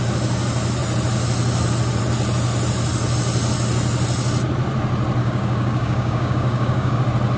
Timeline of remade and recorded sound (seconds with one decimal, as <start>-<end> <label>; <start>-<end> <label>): 0.0-5.2 recorded; 5.2-7.0 remade; 7.0-7.4 recorded